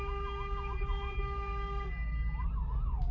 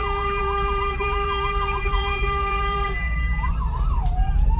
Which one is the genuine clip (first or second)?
first